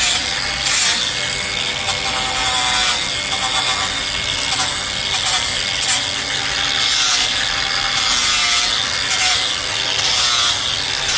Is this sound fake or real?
real